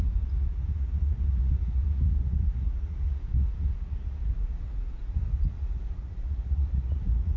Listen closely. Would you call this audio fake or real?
fake